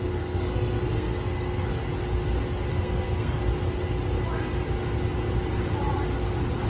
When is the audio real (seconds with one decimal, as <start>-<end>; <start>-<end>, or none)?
1.8-2.7; 3.4-6.7